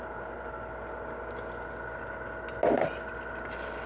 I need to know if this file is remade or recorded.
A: recorded